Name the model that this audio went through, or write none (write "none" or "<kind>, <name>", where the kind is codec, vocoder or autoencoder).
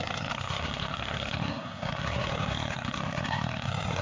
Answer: codec, SNAC